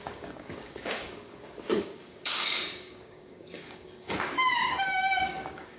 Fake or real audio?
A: fake